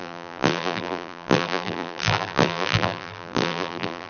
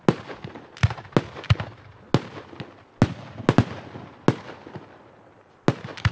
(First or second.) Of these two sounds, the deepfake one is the first